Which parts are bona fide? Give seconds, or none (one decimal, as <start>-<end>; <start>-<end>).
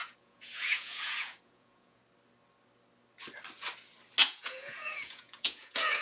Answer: 2.0-4.2